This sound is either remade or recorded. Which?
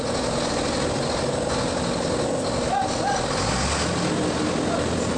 recorded